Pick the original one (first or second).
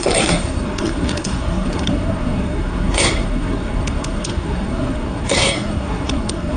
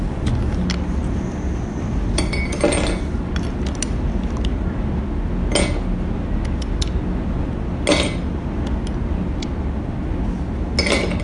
second